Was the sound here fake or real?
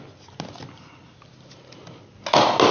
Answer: real